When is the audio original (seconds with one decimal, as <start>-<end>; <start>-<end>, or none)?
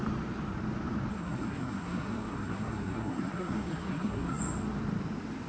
0.0-1.1; 4.4-5.5